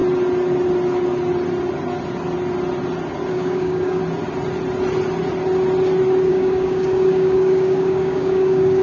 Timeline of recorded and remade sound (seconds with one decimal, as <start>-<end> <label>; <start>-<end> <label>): 0.0-3.3 recorded; 3.3-4.0 remade; 4.0-6.3 recorded; 6.3-8.8 remade